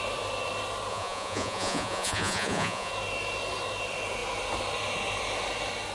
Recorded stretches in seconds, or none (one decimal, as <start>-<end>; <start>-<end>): 0.0-0.9; 2.9-5.9